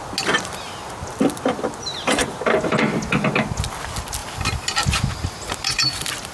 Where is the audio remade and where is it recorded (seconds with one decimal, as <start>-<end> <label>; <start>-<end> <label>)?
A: 0.0-6.3 recorded